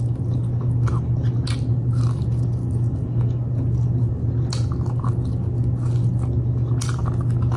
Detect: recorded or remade recorded